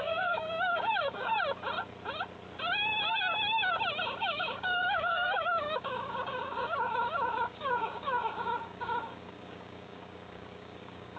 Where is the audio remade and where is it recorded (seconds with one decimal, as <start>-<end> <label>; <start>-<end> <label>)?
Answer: 0.0-1.3 remade; 1.3-4.2 recorded; 4.2-11.2 remade

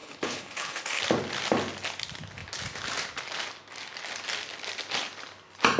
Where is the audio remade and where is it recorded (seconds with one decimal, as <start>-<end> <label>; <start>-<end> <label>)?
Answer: 0.0-1.0 remade; 1.0-5.8 recorded

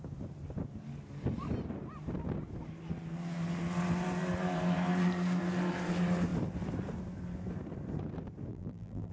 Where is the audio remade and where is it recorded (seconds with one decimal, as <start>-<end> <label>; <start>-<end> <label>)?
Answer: 0.0-8.5 recorded; 8.5-9.1 remade

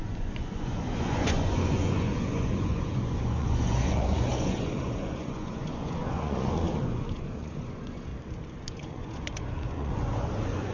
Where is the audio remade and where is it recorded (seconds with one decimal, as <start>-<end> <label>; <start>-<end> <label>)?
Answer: 0.0-8.1 remade; 8.1-8.7 recorded; 8.7-10.7 remade

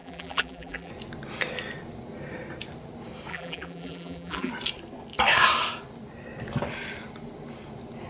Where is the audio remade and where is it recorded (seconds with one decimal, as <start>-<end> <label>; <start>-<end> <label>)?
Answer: 0.0-0.9 remade; 0.9-3.3 recorded; 3.3-4.5 remade; 4.5-8.1 recorded

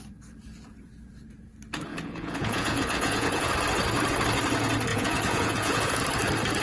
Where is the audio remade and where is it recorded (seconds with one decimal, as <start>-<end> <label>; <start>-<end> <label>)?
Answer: 0.0-1.9 recorded; 1.9-3.5 remade; 3.5-4.9 recorded; 4.9-6.0 remade; 6.0-6.6 recorded

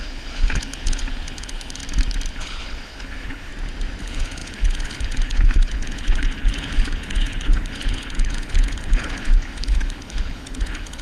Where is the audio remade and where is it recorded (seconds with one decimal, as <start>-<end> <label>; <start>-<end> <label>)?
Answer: 0.0-1.8 remade; 1.8-2.3 recorded; 2.3-3.5 remade; 3.5-4.0 recorded; 4.0-11.0 remade

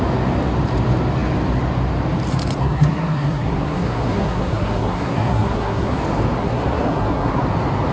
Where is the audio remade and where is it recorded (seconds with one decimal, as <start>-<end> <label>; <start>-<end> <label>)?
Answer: 0.0-2.6 recorded; 2.6-6.0 remade; 6.0-6.4 recorded; 6.4-7.4 remade; 7.4-7.9 recorded